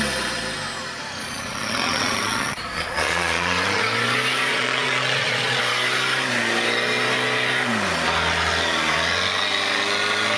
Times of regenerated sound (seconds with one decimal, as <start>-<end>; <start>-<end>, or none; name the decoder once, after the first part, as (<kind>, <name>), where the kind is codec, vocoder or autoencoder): 1.2-3.8 (vocoder, Vocos); 4.5-5.6